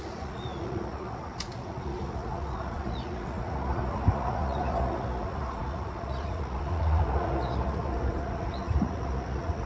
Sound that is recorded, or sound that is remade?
remade